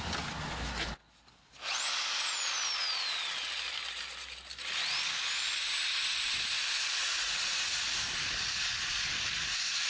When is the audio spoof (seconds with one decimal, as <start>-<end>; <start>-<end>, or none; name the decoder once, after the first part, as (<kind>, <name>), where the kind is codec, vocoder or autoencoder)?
6.6-7.8 (vocoder, Vocos)